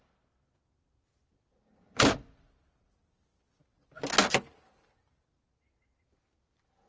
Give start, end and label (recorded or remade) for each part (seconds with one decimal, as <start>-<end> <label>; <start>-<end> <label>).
0.0-6.9 recorded